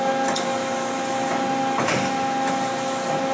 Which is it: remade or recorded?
recorded